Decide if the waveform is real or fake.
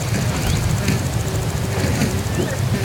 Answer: real